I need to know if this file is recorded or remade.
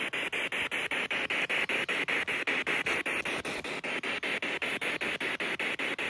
recorded